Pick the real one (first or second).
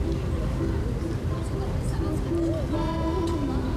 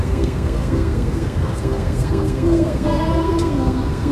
first